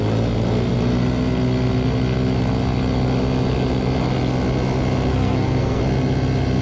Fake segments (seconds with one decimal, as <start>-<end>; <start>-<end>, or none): 5.1-5.8